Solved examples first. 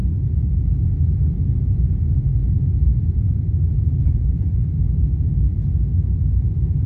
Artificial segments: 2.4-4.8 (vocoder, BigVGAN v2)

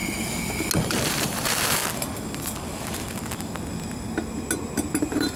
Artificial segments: 0.8-1.8 (vocoder, BigVGAN v2); 5.0-5.4

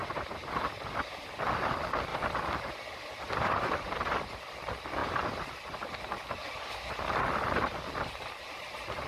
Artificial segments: 0.0-1.2 (vocoder, BigVGAN v2); 2.1-4.3; 5.0-6.9

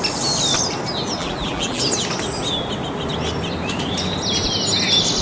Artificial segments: 1.2-1.8 (vocoder, BigVGAN v2)

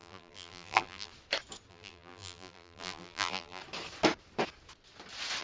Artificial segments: 0.0-1.1 (vocoder, BigVGAN v2); 1.7-3.6